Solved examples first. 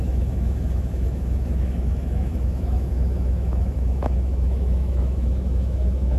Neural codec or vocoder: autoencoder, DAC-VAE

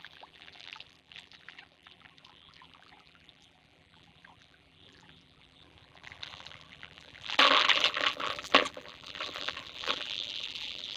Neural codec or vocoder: vocoder, BigVGAN v2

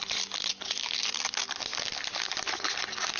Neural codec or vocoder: none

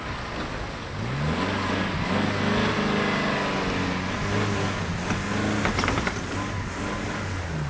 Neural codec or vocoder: none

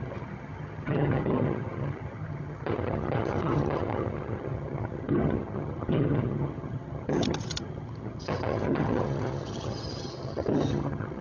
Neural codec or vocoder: vocoder, HiFi-GAN